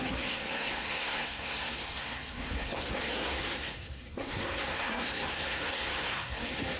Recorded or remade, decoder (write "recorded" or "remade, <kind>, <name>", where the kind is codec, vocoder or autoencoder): remade, codec, SNAC